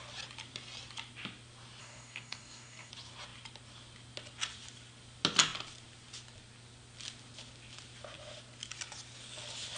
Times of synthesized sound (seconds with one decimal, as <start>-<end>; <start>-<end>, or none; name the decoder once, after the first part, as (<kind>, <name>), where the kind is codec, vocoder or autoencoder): 1.8-2.9 (codec, DAC)